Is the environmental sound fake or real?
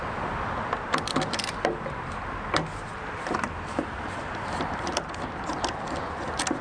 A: fake